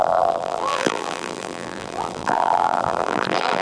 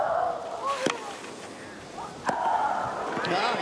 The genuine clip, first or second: second